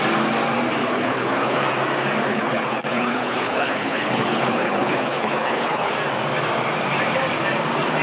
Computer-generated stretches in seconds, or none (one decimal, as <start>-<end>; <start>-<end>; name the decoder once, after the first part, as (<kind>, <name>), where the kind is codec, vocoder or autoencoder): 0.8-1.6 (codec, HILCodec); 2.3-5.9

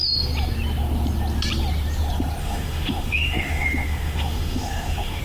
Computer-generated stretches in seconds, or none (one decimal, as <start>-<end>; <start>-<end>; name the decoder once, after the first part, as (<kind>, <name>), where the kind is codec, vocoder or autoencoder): 2.4-5.2 (autoencoder, DAC-VAE)

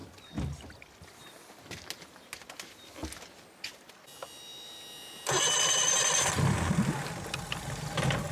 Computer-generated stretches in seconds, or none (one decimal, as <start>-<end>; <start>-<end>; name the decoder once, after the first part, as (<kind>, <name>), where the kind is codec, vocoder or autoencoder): none

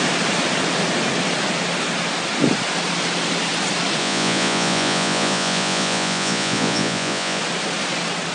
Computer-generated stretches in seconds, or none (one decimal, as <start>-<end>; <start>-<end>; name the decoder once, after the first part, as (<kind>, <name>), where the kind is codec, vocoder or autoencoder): 4.0-7.4 (vocoder, Vocos)

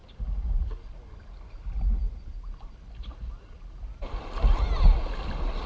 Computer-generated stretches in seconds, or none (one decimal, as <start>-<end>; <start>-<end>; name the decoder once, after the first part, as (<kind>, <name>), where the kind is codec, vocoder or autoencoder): none

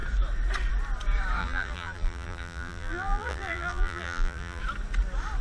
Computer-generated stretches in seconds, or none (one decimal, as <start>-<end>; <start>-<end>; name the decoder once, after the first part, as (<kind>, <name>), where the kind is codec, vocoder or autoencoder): 1.4-4.6 (vocoder, BigVGAN v2)

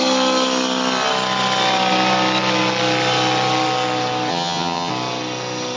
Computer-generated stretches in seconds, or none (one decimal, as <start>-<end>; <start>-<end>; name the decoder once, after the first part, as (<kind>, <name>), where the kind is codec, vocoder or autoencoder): 4.3-4.9 (vocoder, HiFi-GAN)